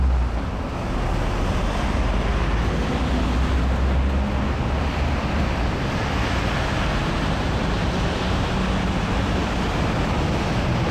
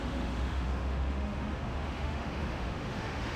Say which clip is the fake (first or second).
second